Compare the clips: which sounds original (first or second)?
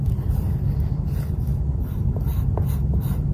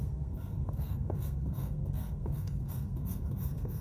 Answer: first